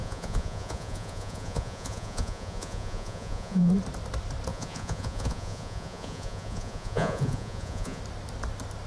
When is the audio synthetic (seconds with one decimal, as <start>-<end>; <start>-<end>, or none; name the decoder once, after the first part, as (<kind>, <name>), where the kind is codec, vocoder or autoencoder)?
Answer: 0.0-3.7 (vocoder, Vocos); 4.5-8.0